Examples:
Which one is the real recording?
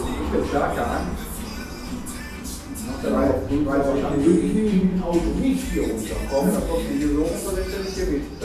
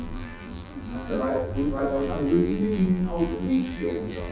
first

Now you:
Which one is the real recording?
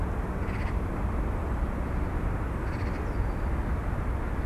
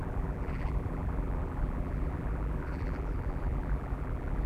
first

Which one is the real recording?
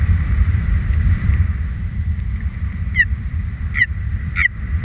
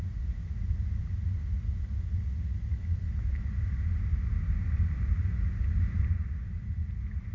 second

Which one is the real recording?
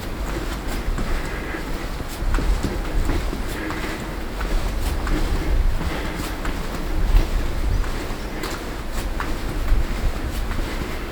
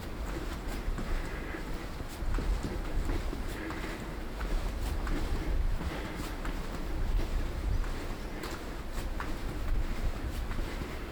first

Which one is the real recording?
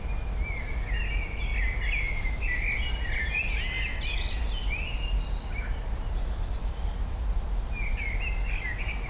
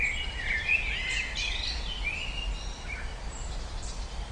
first